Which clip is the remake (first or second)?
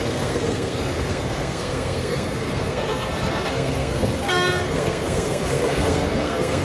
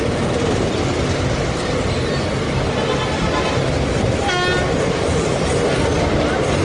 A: first